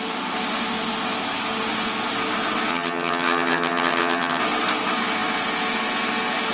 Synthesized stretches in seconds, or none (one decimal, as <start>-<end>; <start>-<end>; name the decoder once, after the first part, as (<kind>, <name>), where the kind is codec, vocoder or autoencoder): 2.7-4.4 (vocoder, HiFi-GAN)